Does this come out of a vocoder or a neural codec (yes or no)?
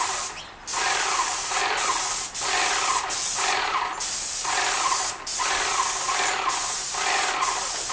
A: no